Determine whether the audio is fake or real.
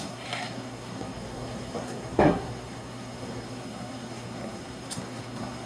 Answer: fake